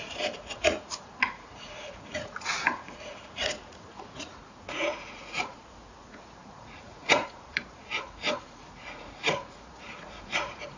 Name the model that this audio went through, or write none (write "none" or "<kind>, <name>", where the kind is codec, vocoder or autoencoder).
vocoder, Vocos